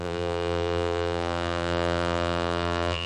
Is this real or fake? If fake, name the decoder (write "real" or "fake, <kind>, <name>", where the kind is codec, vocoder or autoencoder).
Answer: fake, vocoder, BigVGAN v2